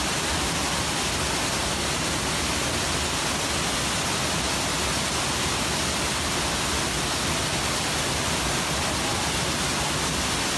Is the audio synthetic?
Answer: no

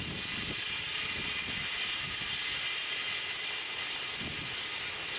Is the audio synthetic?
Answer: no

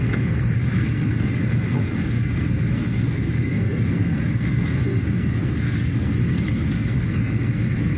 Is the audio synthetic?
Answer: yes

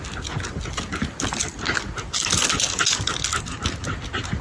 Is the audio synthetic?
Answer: no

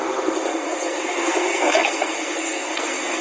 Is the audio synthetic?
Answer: yes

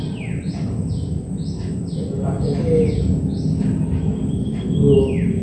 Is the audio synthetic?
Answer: no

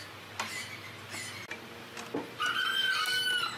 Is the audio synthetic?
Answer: no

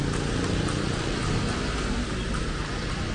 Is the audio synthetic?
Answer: no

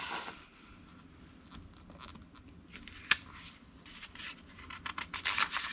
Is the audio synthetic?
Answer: no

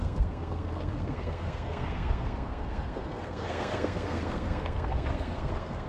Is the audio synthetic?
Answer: yes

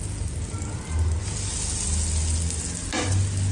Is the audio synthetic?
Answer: no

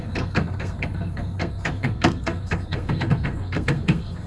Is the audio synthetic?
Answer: yes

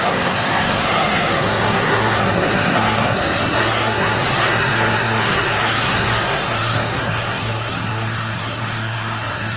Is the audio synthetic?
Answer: yes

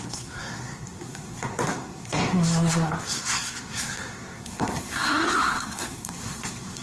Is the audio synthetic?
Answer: yes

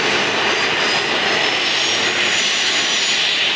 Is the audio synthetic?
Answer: no